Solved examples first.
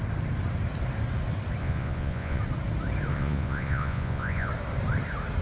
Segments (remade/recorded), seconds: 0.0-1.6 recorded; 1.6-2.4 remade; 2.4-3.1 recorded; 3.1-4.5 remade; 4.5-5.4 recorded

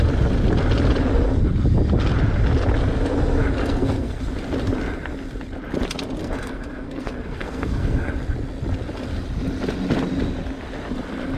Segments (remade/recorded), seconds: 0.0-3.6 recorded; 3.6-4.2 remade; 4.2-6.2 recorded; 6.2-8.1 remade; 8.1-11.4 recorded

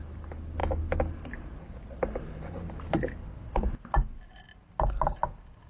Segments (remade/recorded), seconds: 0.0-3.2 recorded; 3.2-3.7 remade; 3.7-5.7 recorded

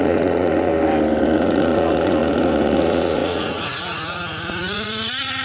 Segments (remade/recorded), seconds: 0.0-0.7 remade; 0.7-1.2 recorded; 1.2-5.4 remade

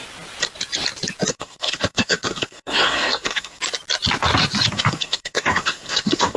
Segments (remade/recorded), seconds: 0.0-1.3 recorded; 1.3-3.6 remade; 3.6-4.7 recorded; 4.7-6.4 remade

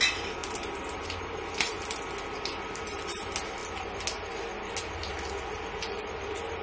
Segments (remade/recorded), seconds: 0.0-0.4 recorded; 0.4-2.0 remade; 2.0-6.6 recorded

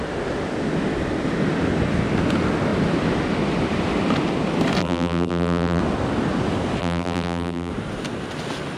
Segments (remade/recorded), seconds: 0.0-4.8 recorded; 4.8-5.8 remade; 5.8-6.8 recorded; 6.8-7.7 remade; 7.7-8.8 recorded